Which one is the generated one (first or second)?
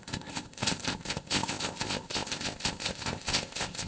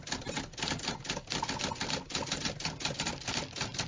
first